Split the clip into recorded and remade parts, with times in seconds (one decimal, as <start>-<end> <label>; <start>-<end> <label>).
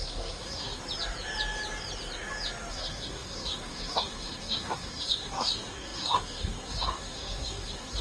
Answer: 0.0-0.8 remade; 0.8-2.7 recorded; 2.7-8.0 remade